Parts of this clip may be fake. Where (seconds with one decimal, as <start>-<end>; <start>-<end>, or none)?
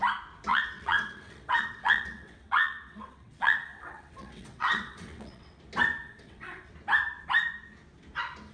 0.5-5.6; 6.0-6.7